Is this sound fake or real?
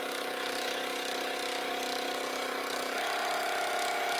fake